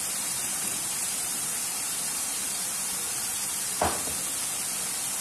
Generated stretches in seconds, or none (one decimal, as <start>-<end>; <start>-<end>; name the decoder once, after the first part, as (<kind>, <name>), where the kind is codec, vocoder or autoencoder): 0.4-3.5 (vocoder, BigVGAN v2)